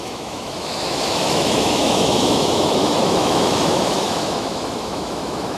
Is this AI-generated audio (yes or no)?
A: yes